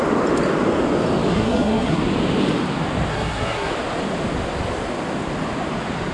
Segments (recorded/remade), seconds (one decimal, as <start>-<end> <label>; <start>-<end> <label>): 0.0-1.3 recorded; 1.3-2.0 remade; 2.0-3.1 recorded; 3.1-3.7 remade; 3.7-6.1 recorded